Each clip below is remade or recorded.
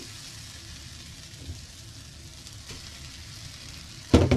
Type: recorded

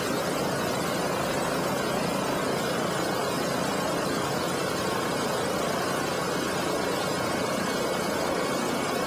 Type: recorded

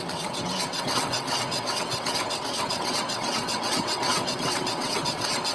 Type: remade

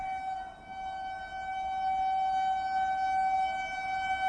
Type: recorded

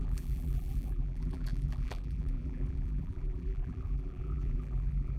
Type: remade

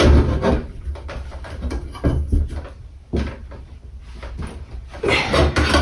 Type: recorded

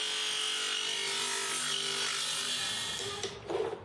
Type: recorded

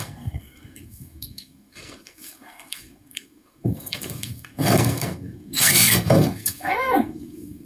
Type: remade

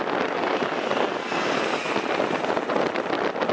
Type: recorded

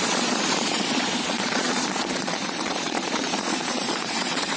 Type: remade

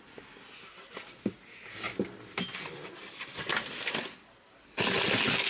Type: recorded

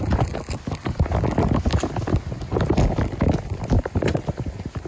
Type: recorded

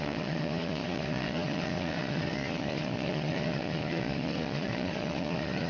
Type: remade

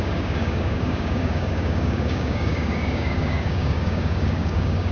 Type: remade